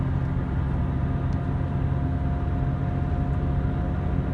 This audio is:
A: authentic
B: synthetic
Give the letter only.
A